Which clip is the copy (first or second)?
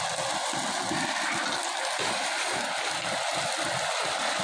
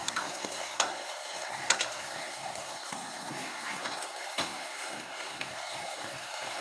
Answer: second